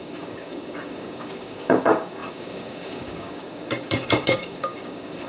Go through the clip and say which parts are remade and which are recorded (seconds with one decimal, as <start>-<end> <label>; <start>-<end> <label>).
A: 0.0-5.3 remade